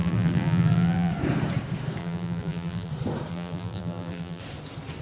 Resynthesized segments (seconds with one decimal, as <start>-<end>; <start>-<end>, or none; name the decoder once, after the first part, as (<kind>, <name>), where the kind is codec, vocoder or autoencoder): 0.0-1.1 (vocoder, BigVGAN v2); 2.0-2.9; 3.3-4.4